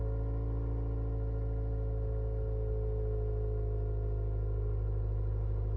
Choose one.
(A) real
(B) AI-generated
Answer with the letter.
A